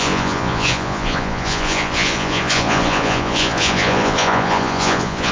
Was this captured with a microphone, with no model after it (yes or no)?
no